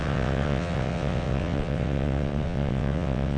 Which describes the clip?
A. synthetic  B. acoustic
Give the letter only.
A